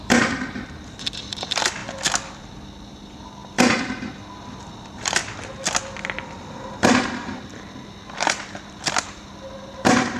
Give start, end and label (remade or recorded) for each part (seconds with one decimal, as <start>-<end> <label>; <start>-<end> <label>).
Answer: 0.0-5.2 remade; 5.2-6.4 recorded; 6.4-10.2 remade